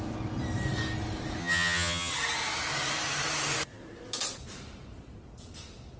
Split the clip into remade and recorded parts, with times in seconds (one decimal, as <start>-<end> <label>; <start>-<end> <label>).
0.0-1.4 recorded; 1.4-2.1 remade; 2.1-6.0 recorded